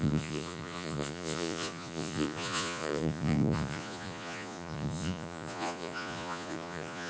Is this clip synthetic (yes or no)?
yes